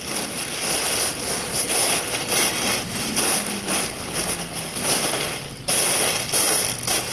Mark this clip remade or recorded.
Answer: recorded